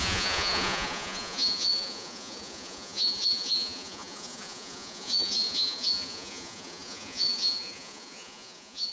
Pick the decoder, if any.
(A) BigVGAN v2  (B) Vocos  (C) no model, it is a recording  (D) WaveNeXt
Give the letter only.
B